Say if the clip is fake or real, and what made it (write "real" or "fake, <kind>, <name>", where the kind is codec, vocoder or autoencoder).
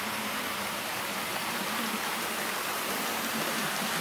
fake, vocoder, BigVGAN v2